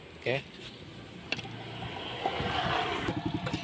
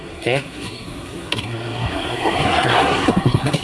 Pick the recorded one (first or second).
first